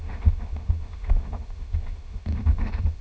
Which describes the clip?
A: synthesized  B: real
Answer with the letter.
A